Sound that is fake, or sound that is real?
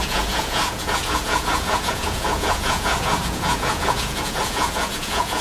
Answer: fake